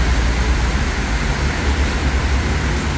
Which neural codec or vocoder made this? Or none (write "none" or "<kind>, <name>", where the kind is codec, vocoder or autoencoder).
none